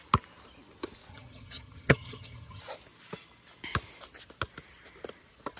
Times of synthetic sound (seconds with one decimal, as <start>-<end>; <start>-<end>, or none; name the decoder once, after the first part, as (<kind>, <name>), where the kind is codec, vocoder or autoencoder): 1.1-2.6 (vocoder, HiFi-GAN)